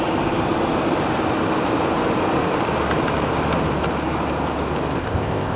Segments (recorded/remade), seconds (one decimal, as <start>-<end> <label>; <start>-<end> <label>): 0.0-5.0 recorded; 5.0-5.6 remade